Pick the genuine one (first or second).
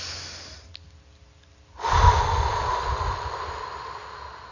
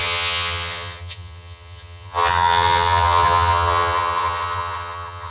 first